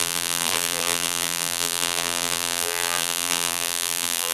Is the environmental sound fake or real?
fake